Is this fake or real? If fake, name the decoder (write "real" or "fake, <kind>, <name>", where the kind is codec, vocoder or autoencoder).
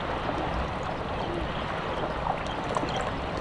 real